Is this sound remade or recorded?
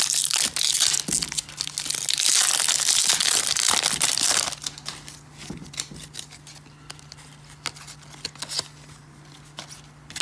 recorded